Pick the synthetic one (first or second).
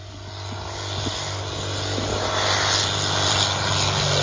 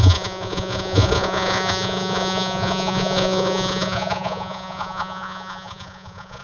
second